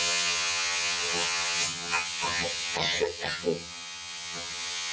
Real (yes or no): no